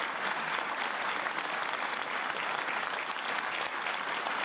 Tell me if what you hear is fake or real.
real